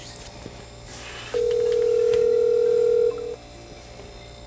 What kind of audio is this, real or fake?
real